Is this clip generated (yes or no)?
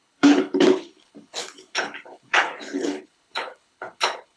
yes